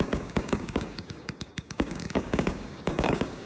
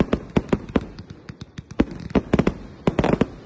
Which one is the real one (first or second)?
second